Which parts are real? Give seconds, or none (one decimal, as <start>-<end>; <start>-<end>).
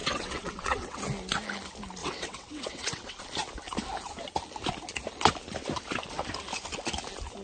1.0-2.0; 3.2-7.4